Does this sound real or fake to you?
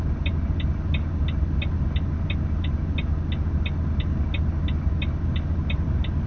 real